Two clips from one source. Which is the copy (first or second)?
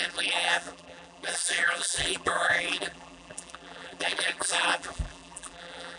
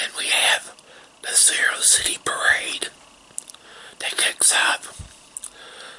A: first